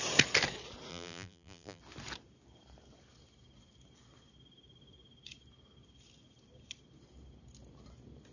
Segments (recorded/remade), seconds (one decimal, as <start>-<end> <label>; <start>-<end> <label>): 0.0-0.9 recorded; 0.9-1.8 remade; 1.8-8.3 recorded